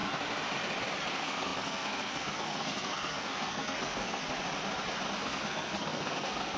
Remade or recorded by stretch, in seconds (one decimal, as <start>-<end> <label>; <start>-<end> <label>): 0.0-1.1 recorded; 1.1-4.2 remade; 4.2-5.2 recorded; 5.2-6.6 remade